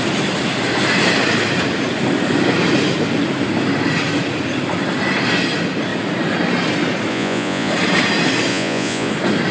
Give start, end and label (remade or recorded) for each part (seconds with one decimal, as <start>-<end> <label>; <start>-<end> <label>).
0.0-7.1 recorded; 7.1-7.7 remade; 7.7-8.5 recorded; 8.5-9.1 remade; 9.1-9.5 recorded